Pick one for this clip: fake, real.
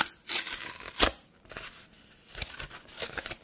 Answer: real